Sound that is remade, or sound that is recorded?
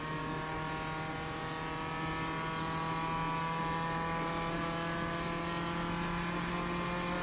recorded